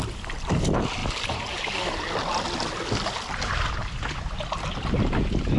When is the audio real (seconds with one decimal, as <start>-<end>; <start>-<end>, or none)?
0.0-5.6